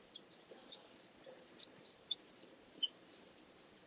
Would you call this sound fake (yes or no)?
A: yes